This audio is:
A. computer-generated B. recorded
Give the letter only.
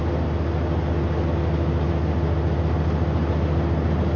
B